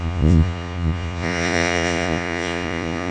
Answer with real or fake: fake